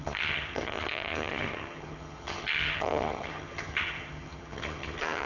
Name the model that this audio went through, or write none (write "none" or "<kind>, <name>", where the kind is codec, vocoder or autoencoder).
vocoder, HiFi-GAN